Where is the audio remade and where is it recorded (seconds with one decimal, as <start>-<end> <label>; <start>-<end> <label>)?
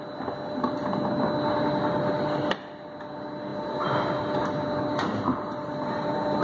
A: 0.0-6.4 recorded